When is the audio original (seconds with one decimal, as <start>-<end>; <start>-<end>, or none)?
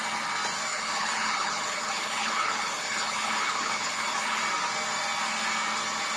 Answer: 0.0-0.7; 4.4-6.2